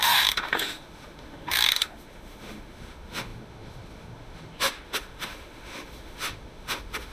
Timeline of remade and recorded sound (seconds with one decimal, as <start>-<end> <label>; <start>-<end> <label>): 0.0-7.1 remade